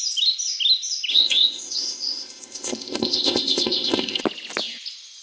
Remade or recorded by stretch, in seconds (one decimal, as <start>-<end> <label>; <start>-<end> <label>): 0.0-1.1 recorded; 1.1-4.2 remade; 4.2-5.2 recorded